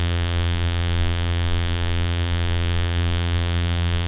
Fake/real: fake